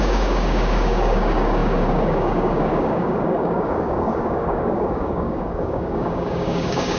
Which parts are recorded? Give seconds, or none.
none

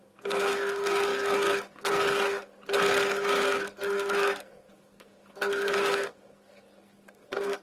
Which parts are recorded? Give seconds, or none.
none